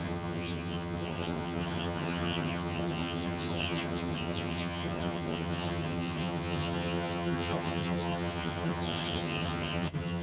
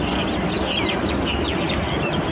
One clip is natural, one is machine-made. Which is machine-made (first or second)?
first